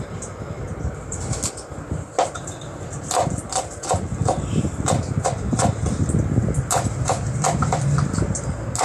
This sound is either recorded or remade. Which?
remade